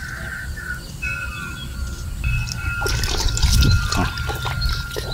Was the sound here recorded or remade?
recorded